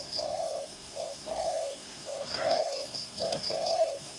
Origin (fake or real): fake